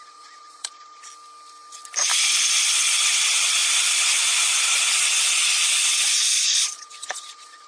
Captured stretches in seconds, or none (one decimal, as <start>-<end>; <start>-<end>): 1.1-3.1